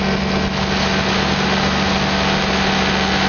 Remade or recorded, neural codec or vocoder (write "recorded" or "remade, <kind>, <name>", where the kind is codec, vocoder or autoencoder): recorded